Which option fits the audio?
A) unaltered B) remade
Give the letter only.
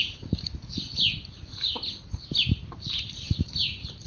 A